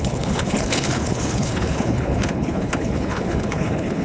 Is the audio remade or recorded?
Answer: remade